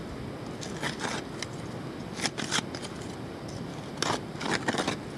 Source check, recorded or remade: recorded